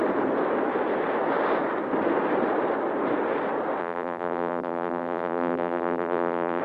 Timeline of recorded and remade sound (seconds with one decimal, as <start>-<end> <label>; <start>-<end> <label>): 0.0-3.8 recorded; 3.8-6.6 remade